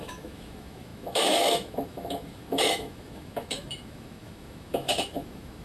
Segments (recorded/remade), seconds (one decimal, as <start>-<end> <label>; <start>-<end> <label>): 0.0-5.6 remade